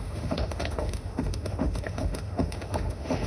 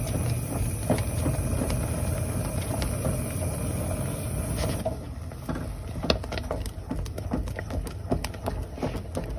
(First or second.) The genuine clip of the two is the second